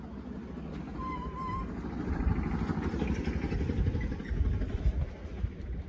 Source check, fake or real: real